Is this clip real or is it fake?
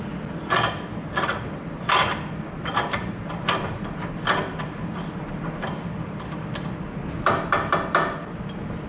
real